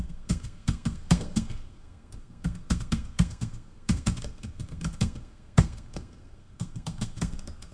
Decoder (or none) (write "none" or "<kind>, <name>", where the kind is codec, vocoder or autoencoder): codec, SNAC